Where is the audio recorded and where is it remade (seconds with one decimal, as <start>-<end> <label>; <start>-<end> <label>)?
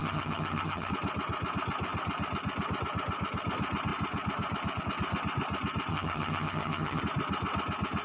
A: 0.0-0.9 remade; 0.9-5.9 recorded; 5.9-7.0 remade; 7.0-8.0 recorded